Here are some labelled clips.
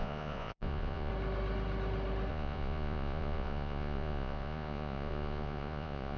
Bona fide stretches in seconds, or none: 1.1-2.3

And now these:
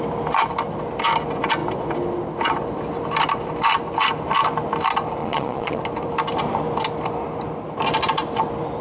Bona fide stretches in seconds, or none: 0.0-5.2; 5.8-8.8

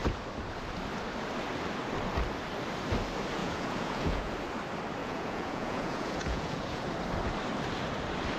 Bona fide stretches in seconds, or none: 0.0-3.4; 4.3-5.0; 6.8-8.4

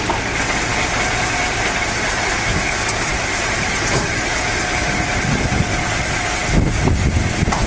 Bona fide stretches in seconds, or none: 0.0-7.7

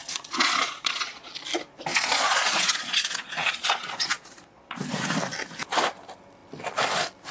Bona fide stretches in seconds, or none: 1.3-1.9; 5.0-7.3

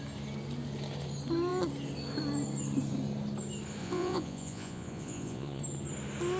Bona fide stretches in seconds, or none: 0.0-3.8; 5.6-6.4

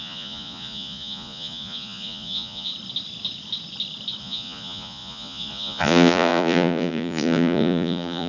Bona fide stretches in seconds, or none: 2.7-4.2